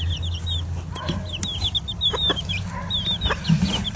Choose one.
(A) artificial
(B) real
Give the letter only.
B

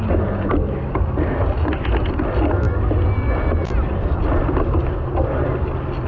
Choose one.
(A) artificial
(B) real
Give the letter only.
B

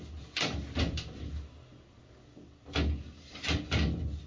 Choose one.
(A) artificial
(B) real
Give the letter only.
B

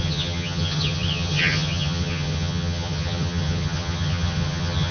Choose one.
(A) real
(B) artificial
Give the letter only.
B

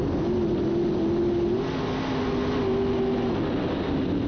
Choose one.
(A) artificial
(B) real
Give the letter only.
B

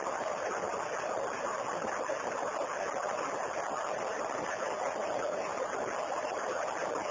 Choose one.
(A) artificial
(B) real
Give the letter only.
B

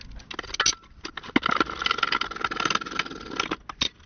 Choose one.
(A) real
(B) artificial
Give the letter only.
A